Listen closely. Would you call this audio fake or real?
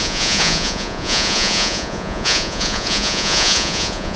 fake